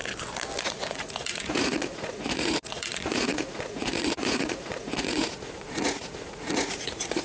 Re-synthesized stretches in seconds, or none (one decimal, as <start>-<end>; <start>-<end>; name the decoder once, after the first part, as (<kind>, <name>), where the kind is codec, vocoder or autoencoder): 0.6-7.2 (vocoder, Vocos)